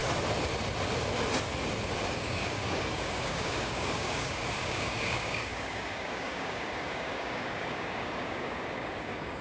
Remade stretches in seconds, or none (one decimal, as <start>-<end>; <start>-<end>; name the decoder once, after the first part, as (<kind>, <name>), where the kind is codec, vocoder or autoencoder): 2.2-9.4 (codec, DAC)

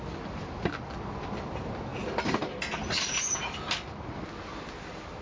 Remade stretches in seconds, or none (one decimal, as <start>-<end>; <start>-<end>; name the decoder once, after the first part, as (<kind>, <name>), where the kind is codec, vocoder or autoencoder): none

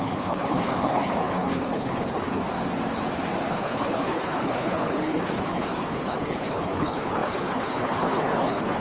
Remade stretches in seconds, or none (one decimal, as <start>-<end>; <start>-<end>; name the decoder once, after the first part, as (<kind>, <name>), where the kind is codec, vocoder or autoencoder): 0.0-2.4 (codec, HILCodec); 3.5-8.8

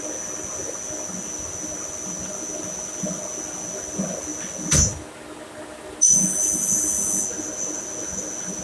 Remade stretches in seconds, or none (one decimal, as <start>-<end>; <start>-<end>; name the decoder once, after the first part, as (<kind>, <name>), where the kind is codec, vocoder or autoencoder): none

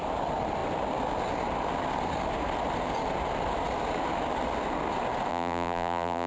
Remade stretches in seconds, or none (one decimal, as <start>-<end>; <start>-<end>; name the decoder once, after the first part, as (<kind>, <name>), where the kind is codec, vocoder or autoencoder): 5.3-6.3 (vocoder, BigVGAN v2)